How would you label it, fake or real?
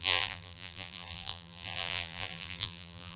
fake